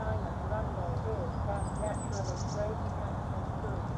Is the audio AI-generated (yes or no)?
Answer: no